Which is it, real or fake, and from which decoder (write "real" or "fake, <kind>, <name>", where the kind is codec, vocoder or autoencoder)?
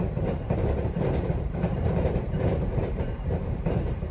fake, vocoder, BigVGAN v2